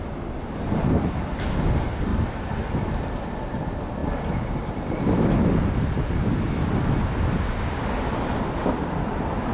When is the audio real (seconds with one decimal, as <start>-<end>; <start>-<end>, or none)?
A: none